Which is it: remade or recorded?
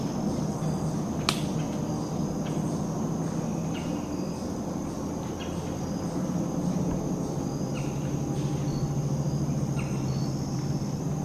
recorded